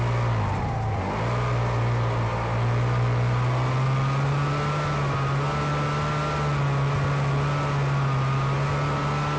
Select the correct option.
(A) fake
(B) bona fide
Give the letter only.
B